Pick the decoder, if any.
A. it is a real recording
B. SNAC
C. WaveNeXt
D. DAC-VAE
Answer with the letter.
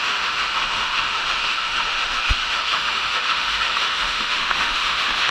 D